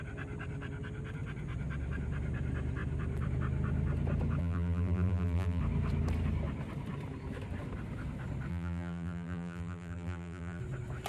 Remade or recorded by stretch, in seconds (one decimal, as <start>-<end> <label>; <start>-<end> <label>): 0.0-4.4 recorded; 4.4-5.6 remade; 5.6-8.5 recorded; 8.5-10.6 remade; 10.6-11.1 recorded